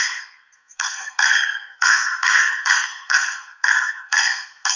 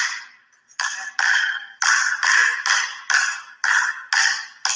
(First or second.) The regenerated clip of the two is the first